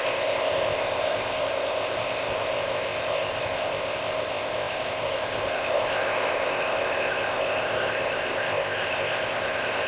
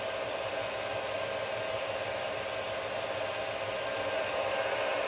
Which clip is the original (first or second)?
second